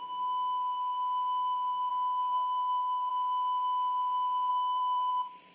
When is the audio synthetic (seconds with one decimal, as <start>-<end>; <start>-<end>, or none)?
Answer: 1.9-3.1; 4.5-5.1